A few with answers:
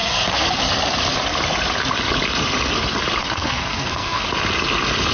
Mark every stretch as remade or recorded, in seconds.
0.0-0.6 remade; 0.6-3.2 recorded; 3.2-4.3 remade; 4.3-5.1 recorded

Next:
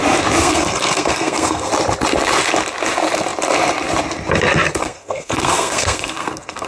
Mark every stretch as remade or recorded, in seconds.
0.0-0.4 recorded; 0.4-1.7 remade; 1.7-4.8 recorded; 4.8-6.7 remade